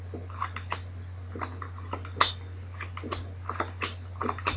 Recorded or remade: recorded